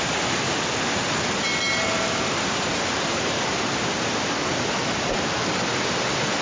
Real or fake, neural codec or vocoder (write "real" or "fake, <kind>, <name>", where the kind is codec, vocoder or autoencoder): real